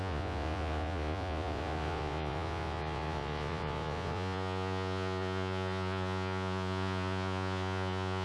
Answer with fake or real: fake